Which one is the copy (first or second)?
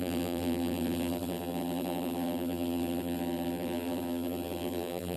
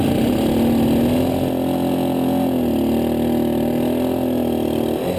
first